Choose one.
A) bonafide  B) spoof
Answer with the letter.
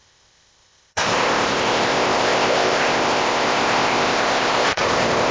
B